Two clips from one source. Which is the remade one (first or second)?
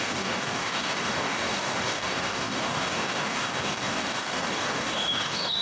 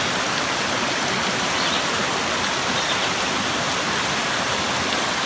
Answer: first